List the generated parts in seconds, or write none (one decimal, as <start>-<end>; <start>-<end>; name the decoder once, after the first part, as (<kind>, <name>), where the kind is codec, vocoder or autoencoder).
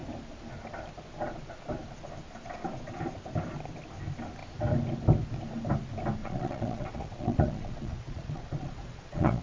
6.2-9.4 (vocoder, Vocos)